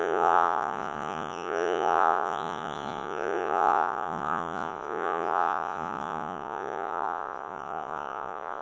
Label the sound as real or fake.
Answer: fake